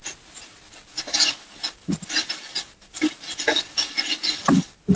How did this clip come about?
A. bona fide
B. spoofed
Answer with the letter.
A